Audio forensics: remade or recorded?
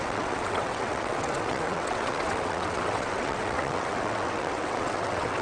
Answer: remade